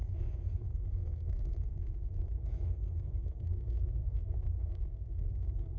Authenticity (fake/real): fake